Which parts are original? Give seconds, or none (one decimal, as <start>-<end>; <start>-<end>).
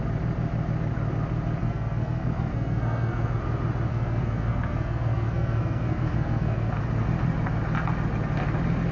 0.0-1.6; 3.4-3.9; 6.7-8.9